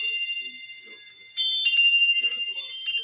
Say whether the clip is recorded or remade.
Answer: remade